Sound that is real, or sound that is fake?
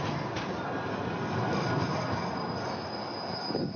real